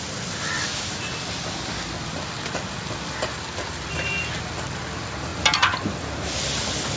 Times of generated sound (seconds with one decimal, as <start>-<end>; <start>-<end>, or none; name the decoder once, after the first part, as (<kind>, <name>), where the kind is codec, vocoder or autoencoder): none